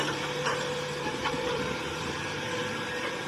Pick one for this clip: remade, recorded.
remade